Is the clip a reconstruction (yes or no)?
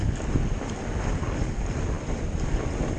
no